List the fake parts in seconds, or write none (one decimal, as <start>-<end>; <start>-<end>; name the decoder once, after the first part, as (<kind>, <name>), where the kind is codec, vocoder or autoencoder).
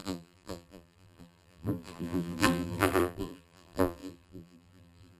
0.0-5.2 (vocoder, BigVGAN v2)